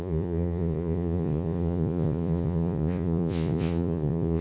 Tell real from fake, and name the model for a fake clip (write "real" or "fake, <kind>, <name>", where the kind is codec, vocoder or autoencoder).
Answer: fake, vocoder, Vocos